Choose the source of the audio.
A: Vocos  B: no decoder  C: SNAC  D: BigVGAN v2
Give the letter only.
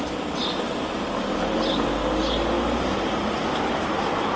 B